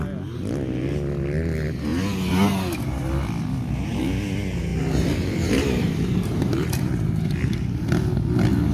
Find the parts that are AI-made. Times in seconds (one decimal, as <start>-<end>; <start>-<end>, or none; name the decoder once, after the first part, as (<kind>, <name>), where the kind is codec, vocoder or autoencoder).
4.7-7.8 (vocoder, BigVGAN v2)